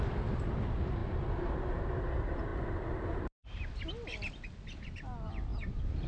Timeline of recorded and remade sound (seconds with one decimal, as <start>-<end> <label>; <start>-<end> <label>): 0.0-6.1 recorded

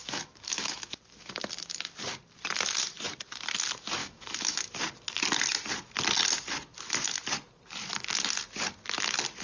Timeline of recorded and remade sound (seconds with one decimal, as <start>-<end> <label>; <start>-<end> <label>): 0.0-1.0 remade; 1.0-4.0 recorded; 4.0-4.6 remade; 4.6-9.4 recorded

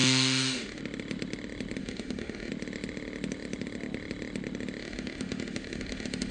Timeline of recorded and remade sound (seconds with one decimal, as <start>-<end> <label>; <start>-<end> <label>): 0.0-0.8 remade; 0.8-1.8 recorded; 1.8-2.5 remade; 2.5-4.8 recorded; 4.8-6.3 remade

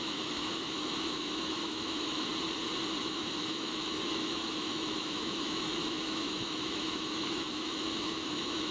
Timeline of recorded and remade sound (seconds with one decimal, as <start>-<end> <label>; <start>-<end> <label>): 0.0-2.3 remade; 2.3-3.0 recorded; 3.0-8.7 remade

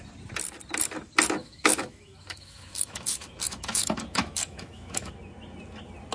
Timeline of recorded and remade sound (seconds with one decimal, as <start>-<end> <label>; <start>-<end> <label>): 0.0-1.4 recorded; 1.4-5.1 remade; 5.1-6.1 recorded

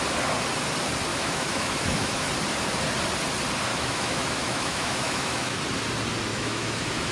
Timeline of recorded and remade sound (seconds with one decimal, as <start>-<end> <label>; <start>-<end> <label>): 0.0-1.1 recorded; 1.1-2.3 remade; 2.3-3.7 recorded; 3.7-5.6 remade; 5.6-6.3 recorded; 6.3-7.1 remade